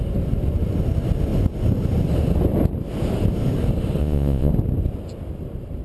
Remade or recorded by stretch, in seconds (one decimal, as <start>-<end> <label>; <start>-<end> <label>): 0.0-4.0 recorded; 4.0-4.5 remade; 4.5-5.8 recorded